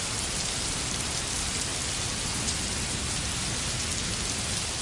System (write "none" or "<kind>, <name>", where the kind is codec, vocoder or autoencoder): none